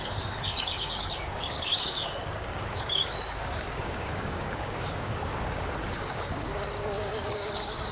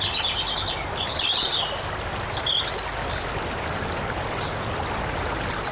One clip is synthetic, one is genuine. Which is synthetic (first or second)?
first